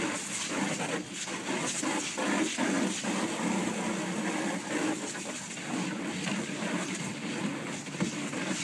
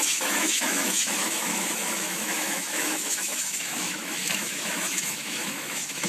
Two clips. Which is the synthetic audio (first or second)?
second